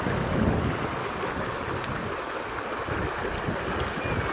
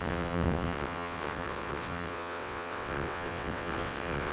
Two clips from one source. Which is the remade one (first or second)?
second